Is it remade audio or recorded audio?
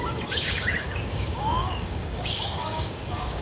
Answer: remade